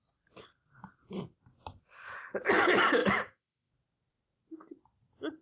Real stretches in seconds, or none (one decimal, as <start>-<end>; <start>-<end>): 0.0-3.0; 3.7-5.4